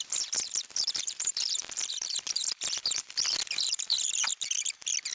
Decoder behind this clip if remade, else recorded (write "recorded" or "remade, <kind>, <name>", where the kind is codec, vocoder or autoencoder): remade, vocoder, BigVGAN v2